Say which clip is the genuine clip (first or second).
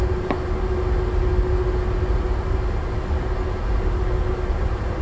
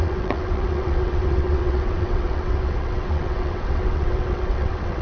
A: first